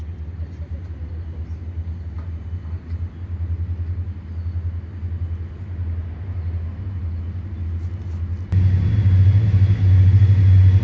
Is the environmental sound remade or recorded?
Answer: recorded